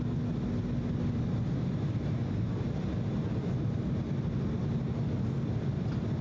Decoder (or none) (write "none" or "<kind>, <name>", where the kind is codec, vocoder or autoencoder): none